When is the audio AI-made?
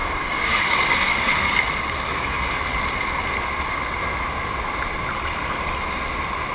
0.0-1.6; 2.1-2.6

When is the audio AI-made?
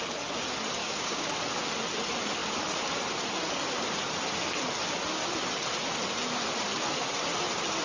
0.8-1.3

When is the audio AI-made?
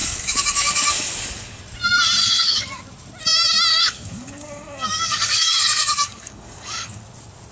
0.0-1.6; 2.2-2.8; 3.7-7.0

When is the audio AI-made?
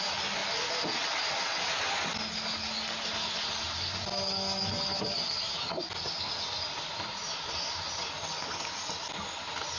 none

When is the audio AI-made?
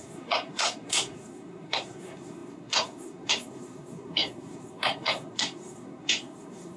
0.0-6.8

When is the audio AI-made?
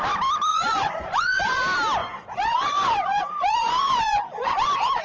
0.5-1.6; 2.0-5.0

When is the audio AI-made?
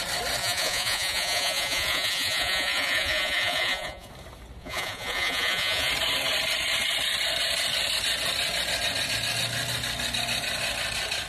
0.4-4.1; 4.6-5.9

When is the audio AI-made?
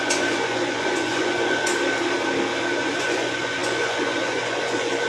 0.0-1.7; 2.7-5.1